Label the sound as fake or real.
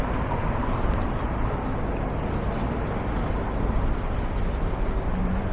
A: real